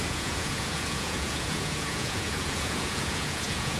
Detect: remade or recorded remade